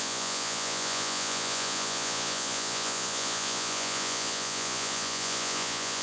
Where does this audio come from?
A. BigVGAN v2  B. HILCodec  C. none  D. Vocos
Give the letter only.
D